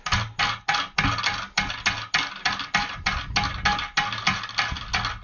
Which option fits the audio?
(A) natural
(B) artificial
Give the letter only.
A